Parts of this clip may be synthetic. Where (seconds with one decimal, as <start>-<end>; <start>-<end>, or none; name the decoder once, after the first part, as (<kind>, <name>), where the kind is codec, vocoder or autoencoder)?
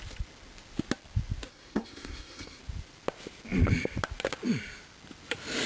1.5-2.6 (codec, SNAC)